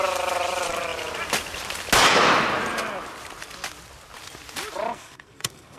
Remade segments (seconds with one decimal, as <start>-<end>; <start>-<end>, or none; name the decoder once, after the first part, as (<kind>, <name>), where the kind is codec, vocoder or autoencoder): 4.9-5.8 (codec, SNAC)